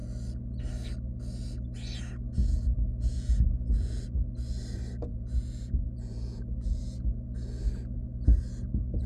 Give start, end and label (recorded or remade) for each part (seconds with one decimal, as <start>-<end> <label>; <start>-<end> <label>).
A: 0.0-2.4 recorded; 2.4-4.0 remade; 4.0-5.1 recorded; 5.1-6.8 remade; 6.8-9.1 recorded